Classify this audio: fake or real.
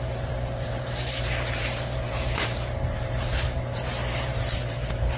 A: fake